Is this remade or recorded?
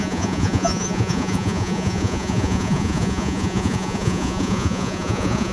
remade